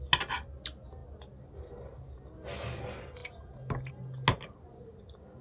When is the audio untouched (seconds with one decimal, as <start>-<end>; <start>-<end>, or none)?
0.0-5.4